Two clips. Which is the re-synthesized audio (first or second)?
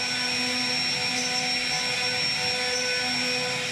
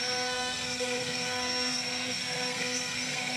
second